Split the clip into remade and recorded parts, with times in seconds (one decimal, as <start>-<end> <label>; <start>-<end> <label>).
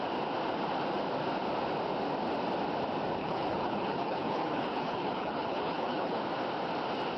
0.0-3.2 recorded; 3.2-6.2 remade; 6.2-7.2 recorded